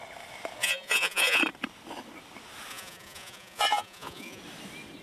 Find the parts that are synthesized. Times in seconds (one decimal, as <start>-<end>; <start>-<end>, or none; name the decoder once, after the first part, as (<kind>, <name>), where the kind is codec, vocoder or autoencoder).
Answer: 0.6-1.4 (vocoder, Vocos); 2.7-4.4